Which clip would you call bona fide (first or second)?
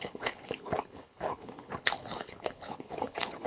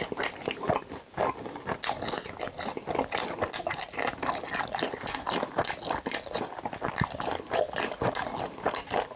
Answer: second